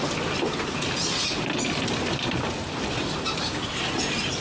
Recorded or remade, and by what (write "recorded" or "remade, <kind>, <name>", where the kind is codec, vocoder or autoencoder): recorded